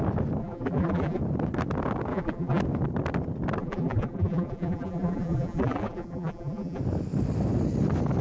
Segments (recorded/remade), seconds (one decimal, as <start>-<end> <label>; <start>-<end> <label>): 0.0-0.4 recorded; 0.4-1.2 remade; 1.2-2.1 recorded; 2.1-2.6 remade; 2.6-3.6 recorded; 3.6-6.8 remade; 6.8-8.2 recorded